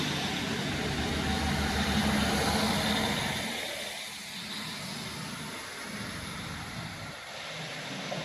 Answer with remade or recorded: recorded